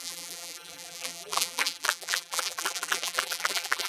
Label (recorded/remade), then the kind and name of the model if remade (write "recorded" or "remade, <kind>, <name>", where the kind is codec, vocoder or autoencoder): remade, vocoder, BigVGAN v2